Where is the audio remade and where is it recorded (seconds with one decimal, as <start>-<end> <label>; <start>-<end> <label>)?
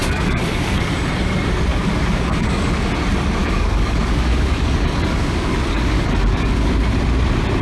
0.0-0.9 remade; 0.9-1.7 recorded; 1.7-2.9 remade; 2.9-3.4 recorded; 3.4-6.7 remade; 6.7-7.6 recorded